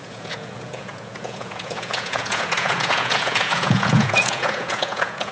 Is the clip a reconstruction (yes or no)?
yes